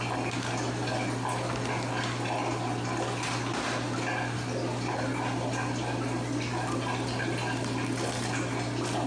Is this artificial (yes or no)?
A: no